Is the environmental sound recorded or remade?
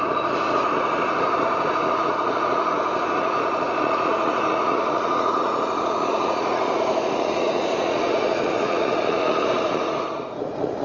remade